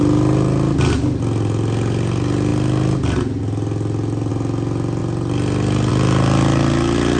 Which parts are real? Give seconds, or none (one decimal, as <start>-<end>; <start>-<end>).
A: 0.0-7.2